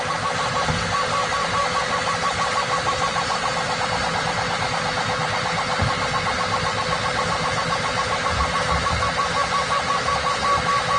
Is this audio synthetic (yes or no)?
no